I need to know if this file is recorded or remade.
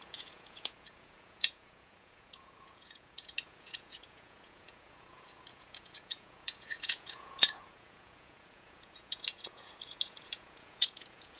remade